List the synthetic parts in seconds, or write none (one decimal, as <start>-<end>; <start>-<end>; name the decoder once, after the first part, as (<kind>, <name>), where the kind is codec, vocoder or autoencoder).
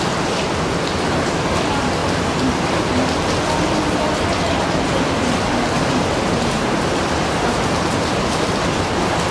2.0-2.8 (vocoder, BigVGAN v2); 5.2-8.2